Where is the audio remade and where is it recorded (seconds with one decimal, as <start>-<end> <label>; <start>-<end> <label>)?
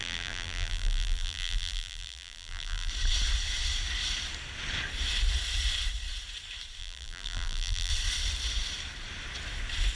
0.0-2.9 remade; 2.9-6.8 recorded; 6.8-7.9 remade; 7.9-10.0 recorded